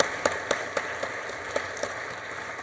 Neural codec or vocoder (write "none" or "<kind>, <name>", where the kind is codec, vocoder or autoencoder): none